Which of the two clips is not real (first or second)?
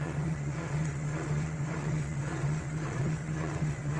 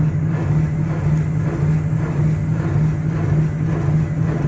first